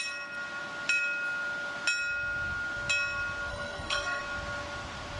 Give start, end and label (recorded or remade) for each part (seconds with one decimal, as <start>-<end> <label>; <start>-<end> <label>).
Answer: 0.0-3.5 recorded; 3.5-4.2 remade; 4.2-5.2 recorded